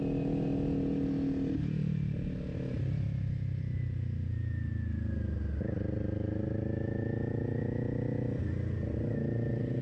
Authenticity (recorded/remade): recorded